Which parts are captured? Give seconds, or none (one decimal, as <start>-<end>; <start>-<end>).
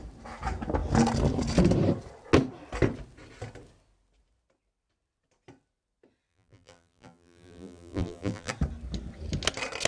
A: 0.0-6.3; 8.5-9.9